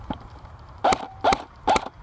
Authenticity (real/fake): fake